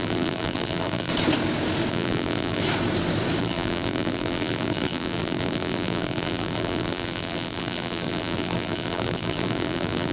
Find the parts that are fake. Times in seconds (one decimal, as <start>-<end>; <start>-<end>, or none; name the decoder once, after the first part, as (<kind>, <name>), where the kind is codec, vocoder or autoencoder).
0.0-1.1 (vocoder, BigVGAN v2); 1.9-2.6; 3.4-10.1